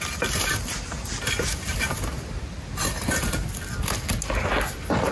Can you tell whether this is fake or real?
real